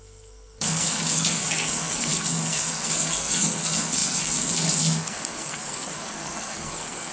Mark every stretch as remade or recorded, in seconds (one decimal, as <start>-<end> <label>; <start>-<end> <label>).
0.0-7.1 remade